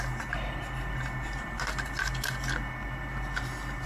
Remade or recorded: recorded